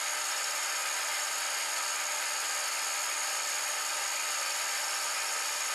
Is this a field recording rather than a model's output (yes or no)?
yes